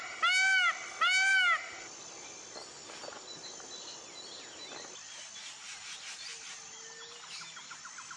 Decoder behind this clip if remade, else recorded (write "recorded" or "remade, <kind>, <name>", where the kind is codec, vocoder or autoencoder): recorded